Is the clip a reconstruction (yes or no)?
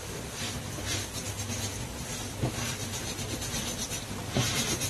no